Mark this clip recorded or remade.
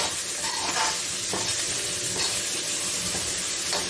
recorded